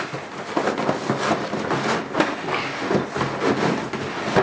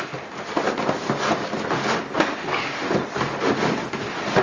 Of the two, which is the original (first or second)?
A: first